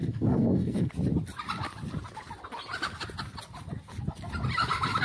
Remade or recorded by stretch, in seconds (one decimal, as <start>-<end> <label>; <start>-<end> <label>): 0.0-0.9 remade; 0.9-5.0 recorded